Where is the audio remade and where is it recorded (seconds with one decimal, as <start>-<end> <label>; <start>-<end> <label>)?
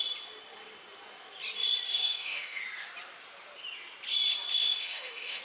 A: 0.0-1.9 recorded; 1.9-2.6 remade; 2.6-4.5 recorded; 4.5-5.4 remade